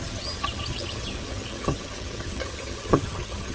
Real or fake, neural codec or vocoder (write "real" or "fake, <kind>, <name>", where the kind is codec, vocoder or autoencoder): fake, vocoder, HiFi-GAN